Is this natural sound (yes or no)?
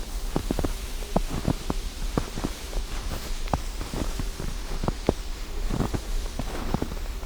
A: yes